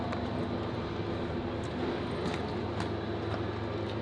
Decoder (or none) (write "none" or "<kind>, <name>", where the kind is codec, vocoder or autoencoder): none